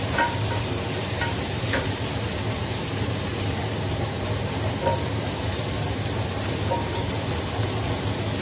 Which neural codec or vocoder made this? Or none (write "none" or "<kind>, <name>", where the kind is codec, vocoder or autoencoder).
vocoder, BigVGAN v2